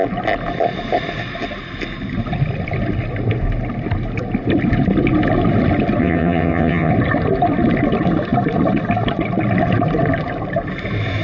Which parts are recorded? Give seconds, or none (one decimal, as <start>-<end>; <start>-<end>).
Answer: 0.0-6.0; 6.9-11.2